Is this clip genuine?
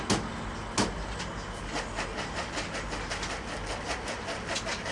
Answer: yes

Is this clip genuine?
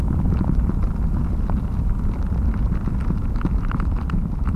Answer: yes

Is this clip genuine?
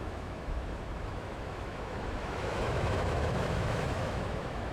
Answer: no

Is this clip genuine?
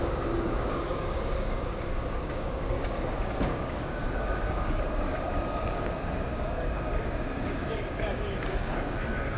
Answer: no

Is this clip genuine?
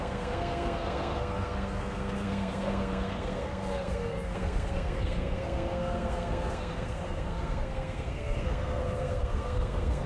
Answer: no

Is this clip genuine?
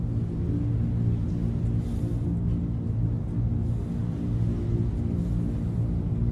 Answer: yes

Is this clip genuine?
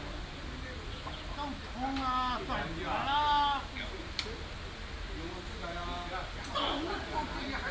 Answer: yes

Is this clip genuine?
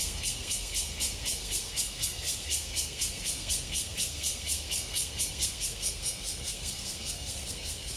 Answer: no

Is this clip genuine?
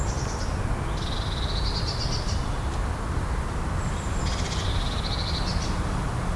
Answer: yes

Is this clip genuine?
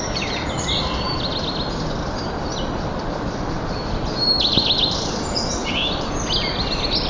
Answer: yes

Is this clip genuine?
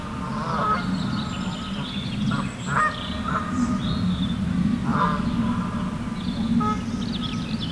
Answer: yes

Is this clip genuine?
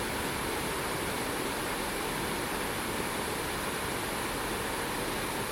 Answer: yes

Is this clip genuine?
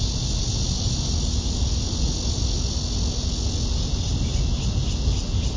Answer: yes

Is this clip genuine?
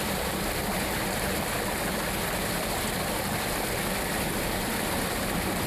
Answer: yes